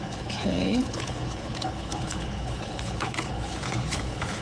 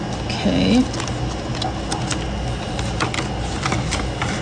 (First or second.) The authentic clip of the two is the second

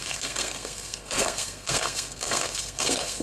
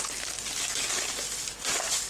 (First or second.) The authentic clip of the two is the second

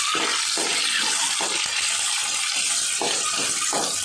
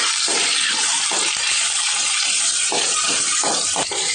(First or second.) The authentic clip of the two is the first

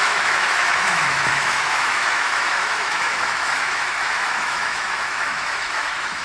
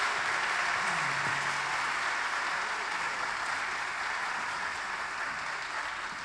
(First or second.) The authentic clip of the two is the second